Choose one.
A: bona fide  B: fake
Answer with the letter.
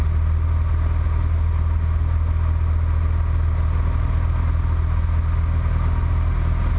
A